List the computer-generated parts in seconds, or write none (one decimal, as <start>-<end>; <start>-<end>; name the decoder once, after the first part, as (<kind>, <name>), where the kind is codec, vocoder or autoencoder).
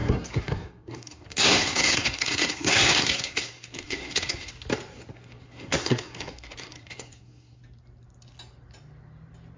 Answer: 0.0-4.5 (codec, SNAC); 5.1-7.6